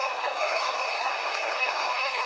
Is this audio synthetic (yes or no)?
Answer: yes